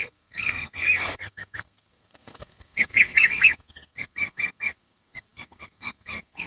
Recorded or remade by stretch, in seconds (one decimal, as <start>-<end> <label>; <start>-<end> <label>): 0.0-6.5 remade